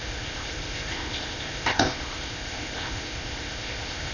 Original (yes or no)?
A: no